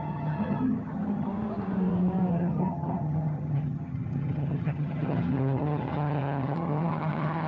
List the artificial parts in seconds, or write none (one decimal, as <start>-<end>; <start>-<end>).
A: 0.0-1.3; 2.3-7.5